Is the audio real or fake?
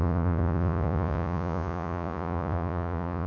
fake